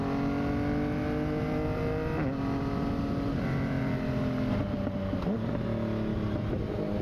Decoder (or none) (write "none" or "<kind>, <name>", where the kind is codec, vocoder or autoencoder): none